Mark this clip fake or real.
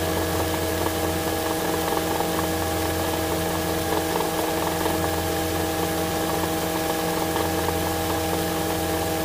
real